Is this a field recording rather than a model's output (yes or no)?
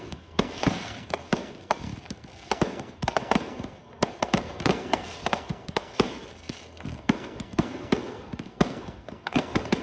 no